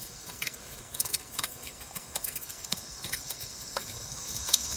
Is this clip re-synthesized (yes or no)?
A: yes